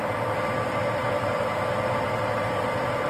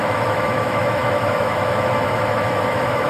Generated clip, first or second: second